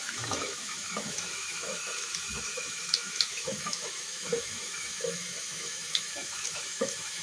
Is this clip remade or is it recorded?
remade